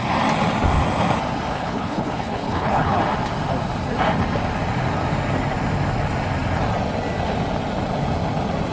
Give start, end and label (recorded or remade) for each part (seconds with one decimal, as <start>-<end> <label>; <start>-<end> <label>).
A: 0.0-1.5 recorded; 1.5-3.0 remade; 3.0-8.7 recorded